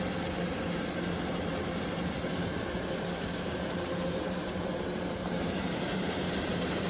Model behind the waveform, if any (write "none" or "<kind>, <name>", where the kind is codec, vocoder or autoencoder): vocoder, BigVGAN v2